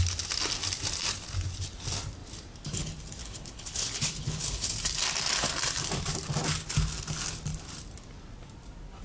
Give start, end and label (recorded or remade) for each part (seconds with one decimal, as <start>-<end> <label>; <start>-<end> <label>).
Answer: 0.0-3.2 recorded; 3.2-4.7 remade; 4.7-9.0 recorded